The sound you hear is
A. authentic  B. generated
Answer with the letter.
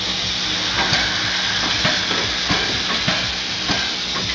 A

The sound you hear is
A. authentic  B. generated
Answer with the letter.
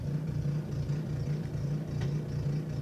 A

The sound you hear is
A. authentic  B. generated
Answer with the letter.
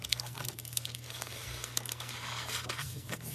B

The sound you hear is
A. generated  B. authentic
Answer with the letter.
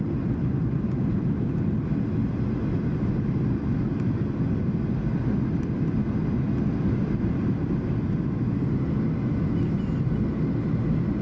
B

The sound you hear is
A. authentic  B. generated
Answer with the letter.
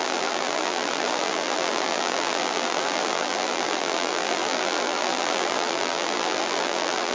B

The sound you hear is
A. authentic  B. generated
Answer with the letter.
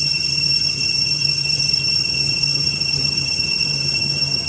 B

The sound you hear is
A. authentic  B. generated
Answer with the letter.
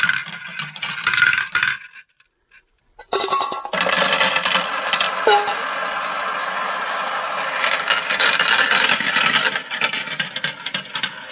A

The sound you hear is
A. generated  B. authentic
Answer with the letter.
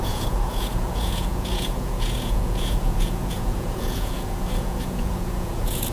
A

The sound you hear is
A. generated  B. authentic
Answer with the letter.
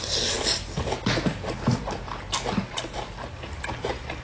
B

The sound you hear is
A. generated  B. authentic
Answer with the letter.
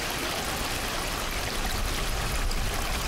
B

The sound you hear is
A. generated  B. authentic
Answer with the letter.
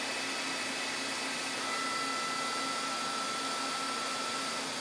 B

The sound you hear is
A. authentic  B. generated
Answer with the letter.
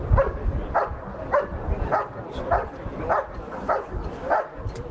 A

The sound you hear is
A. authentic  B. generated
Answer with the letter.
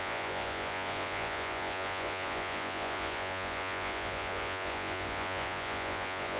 B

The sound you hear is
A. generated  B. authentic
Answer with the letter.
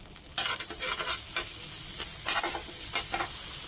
B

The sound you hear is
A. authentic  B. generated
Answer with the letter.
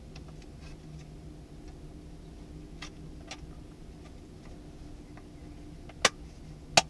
A